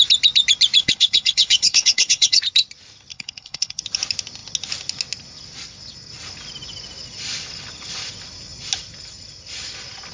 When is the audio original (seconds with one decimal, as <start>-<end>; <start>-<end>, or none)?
0.0-0.8; 2.4-3.1; 3.8-10.1